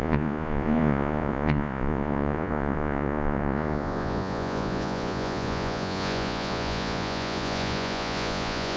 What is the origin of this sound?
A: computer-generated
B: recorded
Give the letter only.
A